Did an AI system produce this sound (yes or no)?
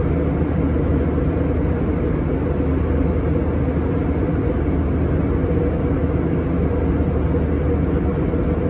no